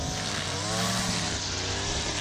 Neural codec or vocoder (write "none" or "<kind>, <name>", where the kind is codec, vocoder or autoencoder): none